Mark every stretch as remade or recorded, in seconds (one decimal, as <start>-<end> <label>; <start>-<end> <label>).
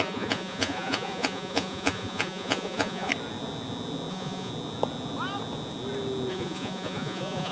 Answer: 0.0-3.1 remade; 3.1-4.1 recorded; 4.1-4.5 remade; 4.5-6.3 recorded; 6.3-7.5 remade